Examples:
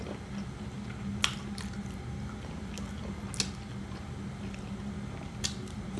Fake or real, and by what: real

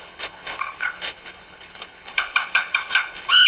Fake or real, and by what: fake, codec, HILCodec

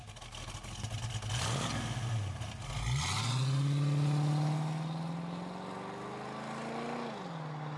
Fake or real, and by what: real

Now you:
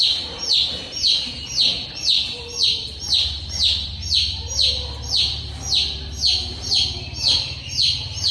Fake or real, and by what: real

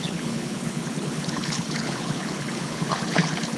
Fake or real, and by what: fake, codec, HILCodec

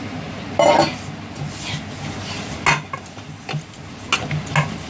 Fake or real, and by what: real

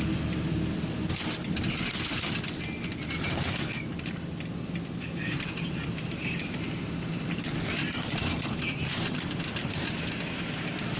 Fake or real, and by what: real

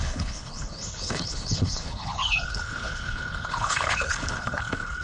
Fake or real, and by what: fake, codec, HILCodec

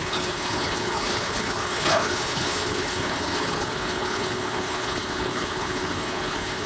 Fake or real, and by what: fake, codec, HILCodec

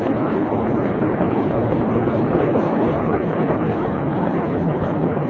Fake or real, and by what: fake, codec, HILCodec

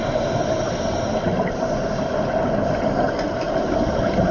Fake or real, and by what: real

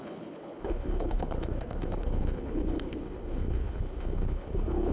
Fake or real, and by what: fake, codec, HILCodec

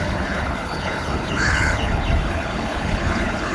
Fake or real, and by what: fake, codec, HILCodec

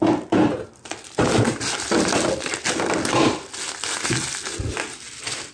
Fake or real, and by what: real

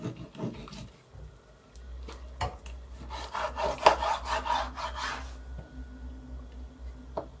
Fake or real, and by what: real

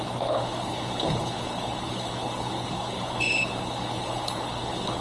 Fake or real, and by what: fake, codec, HILCodec